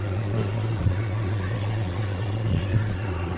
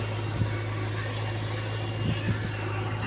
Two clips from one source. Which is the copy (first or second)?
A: first